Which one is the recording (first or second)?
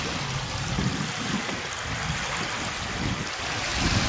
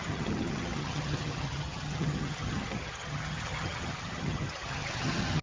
first